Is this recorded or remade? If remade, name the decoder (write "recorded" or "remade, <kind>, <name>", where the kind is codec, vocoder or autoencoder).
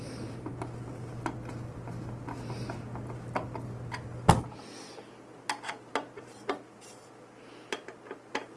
recorded